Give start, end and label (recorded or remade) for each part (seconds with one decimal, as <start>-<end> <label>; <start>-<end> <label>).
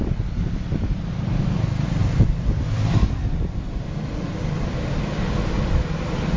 0.0-6.4 remade